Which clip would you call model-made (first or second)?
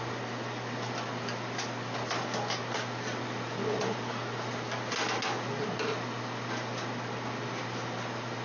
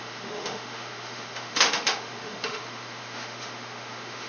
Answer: second